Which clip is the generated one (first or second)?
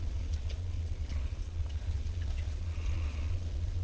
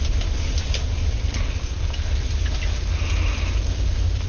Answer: first